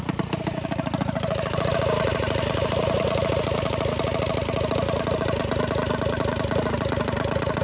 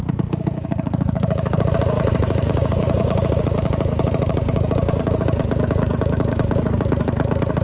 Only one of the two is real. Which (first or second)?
first